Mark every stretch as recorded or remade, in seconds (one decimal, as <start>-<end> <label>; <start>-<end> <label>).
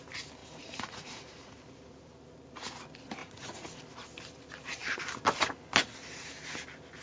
0.0-0.4 recorded; 0.4-1.6 remade; 1.6-3.2 recorded; 3.2-3.8 remade; 3.8-7.0 recorded